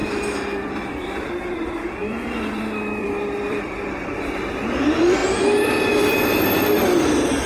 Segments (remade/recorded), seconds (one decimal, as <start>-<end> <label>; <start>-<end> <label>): 0.0-7.5 remade

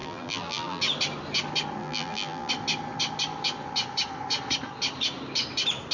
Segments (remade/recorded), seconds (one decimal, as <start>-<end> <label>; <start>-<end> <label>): 0.0-0.8 remade; 0.8-1.8 recorded; 1.8-2.5 remade; 2.5-5.9 recorded

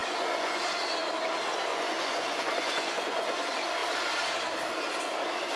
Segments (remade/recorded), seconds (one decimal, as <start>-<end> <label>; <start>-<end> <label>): 0.0-0.6 remade; 0.6-1.7 recorded; 1.7-3.4 remade; 3.4-5.6 recorded

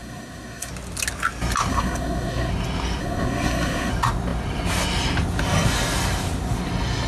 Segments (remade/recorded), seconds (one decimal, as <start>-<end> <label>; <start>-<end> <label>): 0.0-0.7 remade; 0.7-1.7 recorded; 1.7-2.5 remade; 2.5-3.0 recorded; 3.0-3.9 remade; 3.9-7.1 recorded

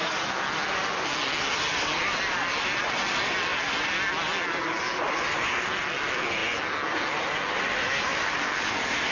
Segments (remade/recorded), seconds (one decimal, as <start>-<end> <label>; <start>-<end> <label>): 0.0-9.1 recorded

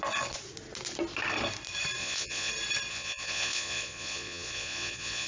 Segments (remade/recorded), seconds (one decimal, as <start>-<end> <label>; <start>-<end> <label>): 0.0-2.0 recorded; 2.0-2.5 remade; 2.5-2.9 recorded; 2.9-5.3 remade